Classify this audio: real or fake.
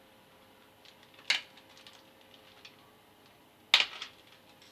real